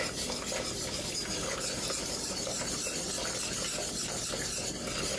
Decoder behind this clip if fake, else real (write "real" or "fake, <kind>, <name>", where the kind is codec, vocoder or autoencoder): real